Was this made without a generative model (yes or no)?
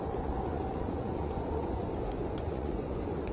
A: no